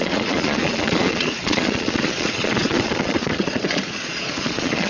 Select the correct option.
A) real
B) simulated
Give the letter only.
B